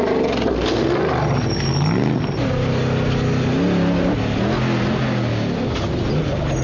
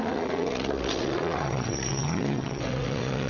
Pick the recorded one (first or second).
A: first